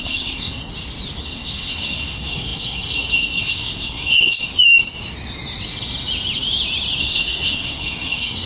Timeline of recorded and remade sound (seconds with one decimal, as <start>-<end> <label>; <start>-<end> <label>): 0.0-0.7 remade; 0.7-1.2 recorded; 1.2-4.5 remade; 4.5-7.0 recorded; 7.0-8.5 remade